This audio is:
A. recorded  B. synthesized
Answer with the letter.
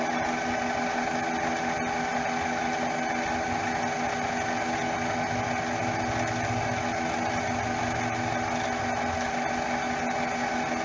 A